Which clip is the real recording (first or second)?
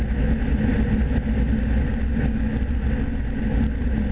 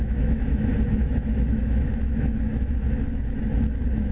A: first